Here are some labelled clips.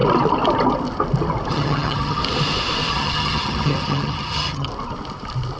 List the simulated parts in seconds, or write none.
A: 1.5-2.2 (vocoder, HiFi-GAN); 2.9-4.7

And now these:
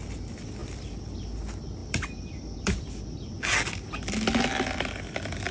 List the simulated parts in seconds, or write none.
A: 0.6-1.1 (vocoder, BigVGAN v2); 1.8-2.9

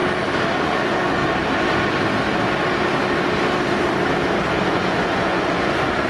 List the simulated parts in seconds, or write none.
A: 0.6-1.2 (vocoder, Vocos); 4.7-6.1

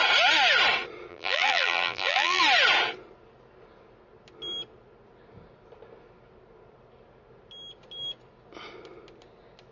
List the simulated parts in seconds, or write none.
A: 1.1-2.4 (vocoder, BigVGAN v2)

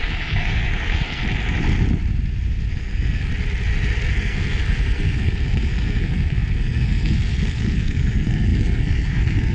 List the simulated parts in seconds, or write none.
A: 0.0-1.2 (codec, SNAC); 2.7-3.3; 4.1-9.5

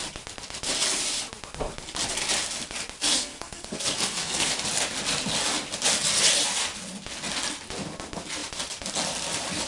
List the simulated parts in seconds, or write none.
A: 3.1-4.5 (codec, SNAC)

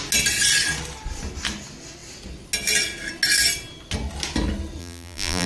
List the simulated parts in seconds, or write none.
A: 4.8-5.5 (vocoder, BigVGAN v2)